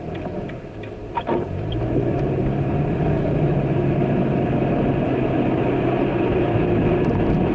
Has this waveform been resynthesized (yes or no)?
yes